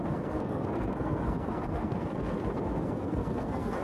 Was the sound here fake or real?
fake